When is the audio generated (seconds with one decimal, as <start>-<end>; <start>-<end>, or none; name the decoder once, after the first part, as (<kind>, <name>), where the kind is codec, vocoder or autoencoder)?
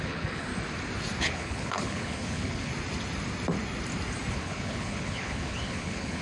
0.0-0.5 (codec, HILCodec); 1.2-2.7; 4.3-6.2